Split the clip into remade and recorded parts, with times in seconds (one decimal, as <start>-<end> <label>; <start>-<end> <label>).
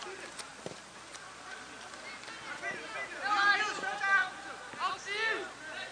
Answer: 0.0-5.9 recorded